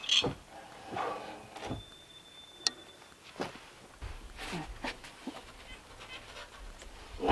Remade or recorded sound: recorded